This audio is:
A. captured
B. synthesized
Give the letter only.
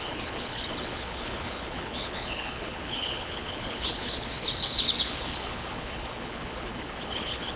B